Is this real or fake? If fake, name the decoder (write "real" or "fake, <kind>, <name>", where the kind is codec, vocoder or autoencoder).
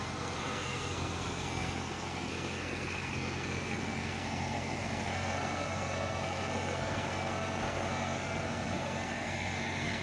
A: fake, codec, SNAC